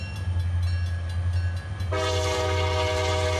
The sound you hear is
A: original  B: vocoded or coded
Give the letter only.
A